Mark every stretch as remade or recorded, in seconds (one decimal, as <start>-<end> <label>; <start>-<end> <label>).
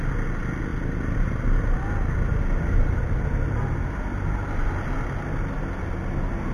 0.0-6.5 recorded